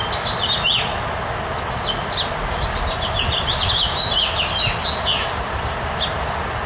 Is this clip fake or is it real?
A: real